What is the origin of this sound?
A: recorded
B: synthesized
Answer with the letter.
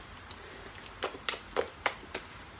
A